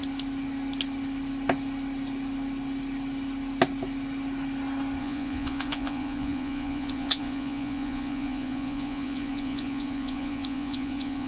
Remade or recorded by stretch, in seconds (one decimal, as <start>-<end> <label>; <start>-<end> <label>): 0.0-5.0 recorded; 5.0-11.3 remade